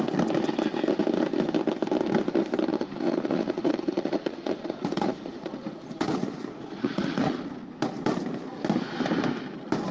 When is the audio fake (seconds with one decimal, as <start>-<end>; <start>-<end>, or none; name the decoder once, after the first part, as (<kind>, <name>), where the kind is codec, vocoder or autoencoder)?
2.7-7.7 (vocoder, Vocos)